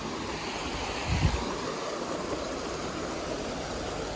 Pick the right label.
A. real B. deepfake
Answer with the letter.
A